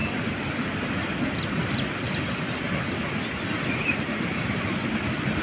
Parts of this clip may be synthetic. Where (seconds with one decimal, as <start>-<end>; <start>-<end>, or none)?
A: none